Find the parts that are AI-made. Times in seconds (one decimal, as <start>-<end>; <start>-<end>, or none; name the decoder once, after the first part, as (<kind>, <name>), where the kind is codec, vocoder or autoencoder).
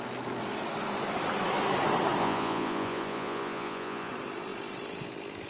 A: 2.2-4.1 (vocoder, Vocos)